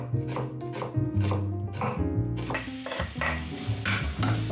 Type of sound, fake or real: real